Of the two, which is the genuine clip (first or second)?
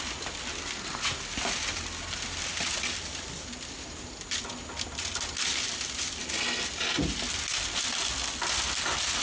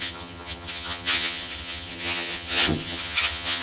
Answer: first